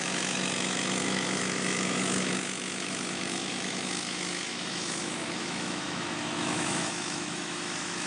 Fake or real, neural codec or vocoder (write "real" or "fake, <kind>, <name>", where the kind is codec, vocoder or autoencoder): fake, autoencoder, DAC-VAE